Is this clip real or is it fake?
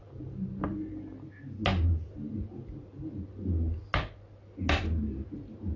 real